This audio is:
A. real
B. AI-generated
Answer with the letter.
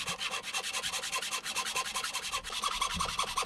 A